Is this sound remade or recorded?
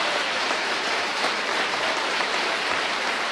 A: remade